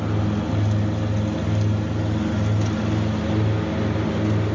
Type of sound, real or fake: real